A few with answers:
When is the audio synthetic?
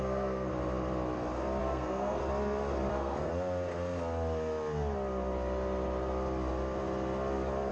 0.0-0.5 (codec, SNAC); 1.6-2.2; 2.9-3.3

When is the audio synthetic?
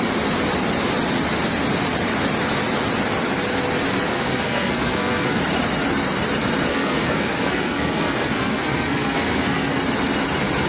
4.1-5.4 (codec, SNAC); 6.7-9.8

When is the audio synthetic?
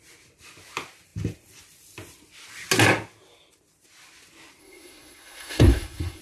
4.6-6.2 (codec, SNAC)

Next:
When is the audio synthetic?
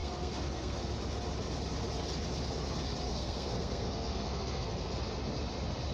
0.0-0.9 (codec, SNAC); 3.1-4.9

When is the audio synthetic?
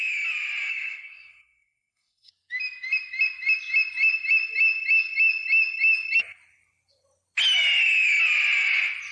0.7-2.3 (codec, SNAC)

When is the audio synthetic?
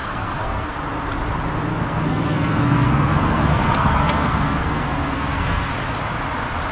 0.0-0.8 (codec, SNAC); 1.7-5.7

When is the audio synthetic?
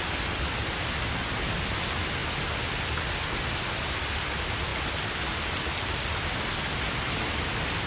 none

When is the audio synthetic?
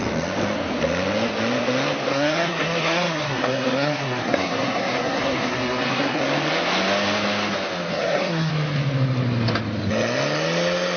2.1-6.2 (codec, SNAC); 7.9-8.5